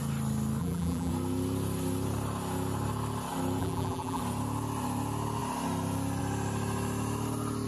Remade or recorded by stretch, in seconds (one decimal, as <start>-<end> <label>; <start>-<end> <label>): 0.0-0.6 recorded; 0.6-1.1 remade; 1.1-3.6 recorded; 3.6-4.2 remade; 4.2-7.7 recorded